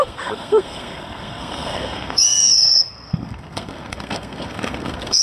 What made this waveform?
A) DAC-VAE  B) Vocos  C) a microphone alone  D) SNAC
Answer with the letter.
D